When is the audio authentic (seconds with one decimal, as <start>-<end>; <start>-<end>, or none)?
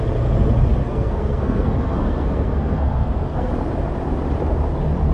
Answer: 0.0-0.8; 3.5-5.1